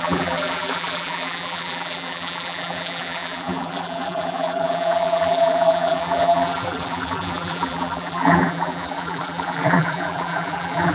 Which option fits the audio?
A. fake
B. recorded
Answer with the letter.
A